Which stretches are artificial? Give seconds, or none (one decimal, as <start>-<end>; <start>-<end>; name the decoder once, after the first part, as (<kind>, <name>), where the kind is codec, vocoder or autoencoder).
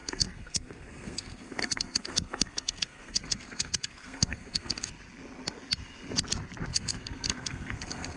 0.0-4.9 (codec, SNAC); 6.7-8.2